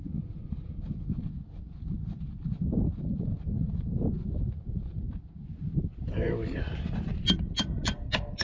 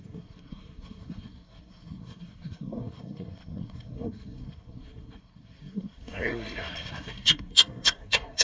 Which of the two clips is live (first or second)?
first